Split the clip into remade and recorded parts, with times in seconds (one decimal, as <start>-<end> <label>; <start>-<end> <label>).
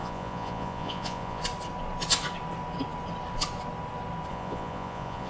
0.0-1.4 remade; 1.4-4.3 recorded; 4.3-5.3 remade